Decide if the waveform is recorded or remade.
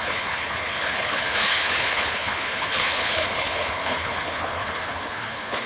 remade